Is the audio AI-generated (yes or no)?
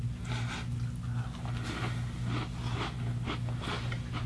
no